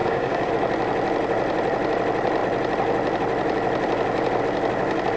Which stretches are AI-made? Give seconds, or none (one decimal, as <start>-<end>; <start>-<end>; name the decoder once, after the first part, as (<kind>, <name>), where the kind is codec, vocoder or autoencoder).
0.0-0.5 (codec, DAC)